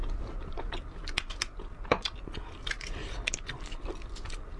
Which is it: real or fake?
real